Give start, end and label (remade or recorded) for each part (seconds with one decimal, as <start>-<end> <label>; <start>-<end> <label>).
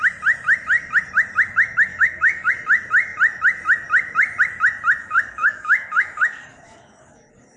0.0-1.9 recorded; 1.9-2.5 remade; 2.5-5.0 recorded; 5.0-7.6 remade